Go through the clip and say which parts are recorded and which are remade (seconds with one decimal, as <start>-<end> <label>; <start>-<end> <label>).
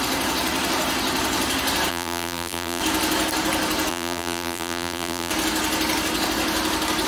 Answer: 0.0-1.9 recorded; 1.9-2.8 remade; 2.8-3.9 recorded; 3.9-5.3 remade; 5.3-7.1 recorded